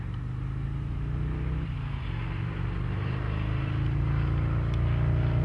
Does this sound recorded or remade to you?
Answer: recorded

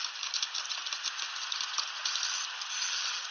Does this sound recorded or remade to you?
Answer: recorded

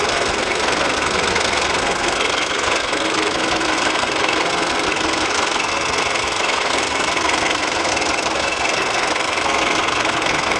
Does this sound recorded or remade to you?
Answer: remade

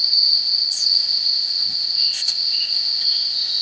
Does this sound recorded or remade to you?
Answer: remade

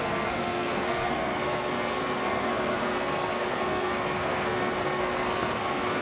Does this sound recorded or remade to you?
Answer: remade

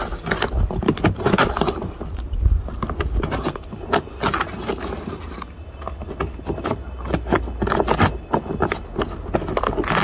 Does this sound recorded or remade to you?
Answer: recorded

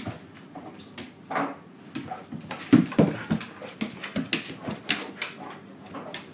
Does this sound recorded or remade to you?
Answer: recorded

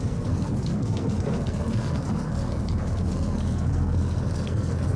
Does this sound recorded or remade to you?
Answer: remade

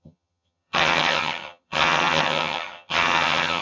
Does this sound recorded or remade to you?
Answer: remade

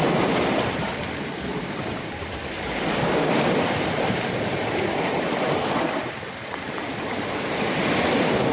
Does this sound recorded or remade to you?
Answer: remade